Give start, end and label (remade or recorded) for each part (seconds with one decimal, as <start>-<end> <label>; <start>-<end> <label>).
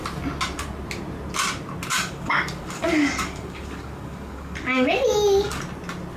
0.0-1.9 recorded; 1.9-5.6 remade; 5.6-6.2 recorded